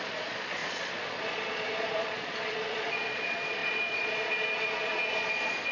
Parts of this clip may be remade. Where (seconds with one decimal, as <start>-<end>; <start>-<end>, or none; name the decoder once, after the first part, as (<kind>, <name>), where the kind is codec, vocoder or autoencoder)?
0.0-5.7 (vocoder, Vocos)